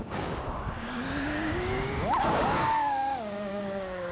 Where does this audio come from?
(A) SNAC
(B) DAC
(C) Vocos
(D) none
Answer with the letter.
B